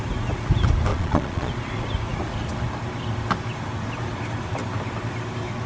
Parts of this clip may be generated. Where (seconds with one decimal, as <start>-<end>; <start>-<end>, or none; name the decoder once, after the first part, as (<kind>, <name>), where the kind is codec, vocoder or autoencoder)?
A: 0.9-1.5 (vocoder, Vocos)